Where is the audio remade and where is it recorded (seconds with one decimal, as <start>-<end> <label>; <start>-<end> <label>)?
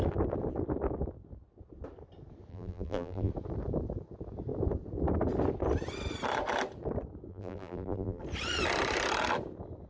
0.0-2.5 recorded; 2.5-3.3 remade; 3.3-7.3 recorded; 7.3-8.2 remade; 8.2-9.9 recorded